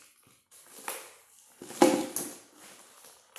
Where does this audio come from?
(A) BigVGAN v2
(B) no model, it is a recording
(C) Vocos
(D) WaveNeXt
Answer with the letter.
B